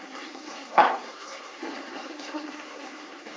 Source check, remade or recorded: remade